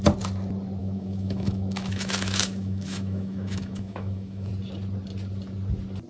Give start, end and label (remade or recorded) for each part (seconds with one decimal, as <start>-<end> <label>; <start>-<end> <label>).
0.0-0.8 recorded; 0.8-4.5 remade; 4.5-6.1 recorded